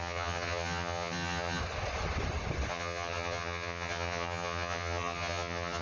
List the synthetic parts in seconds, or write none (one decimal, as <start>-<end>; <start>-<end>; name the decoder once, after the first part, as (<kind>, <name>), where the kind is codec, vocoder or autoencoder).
0.0-1.6 (vocoder, HiFi-GAN); 2.7-5.8